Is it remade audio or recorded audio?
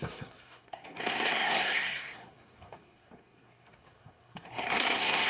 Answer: remade